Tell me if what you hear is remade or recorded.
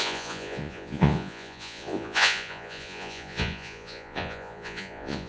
remade